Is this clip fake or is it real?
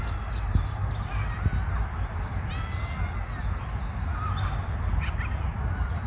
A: real